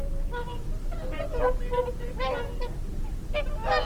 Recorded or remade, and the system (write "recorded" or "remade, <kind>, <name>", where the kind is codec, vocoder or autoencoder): recorded